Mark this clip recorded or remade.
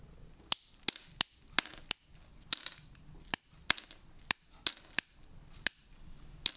recorded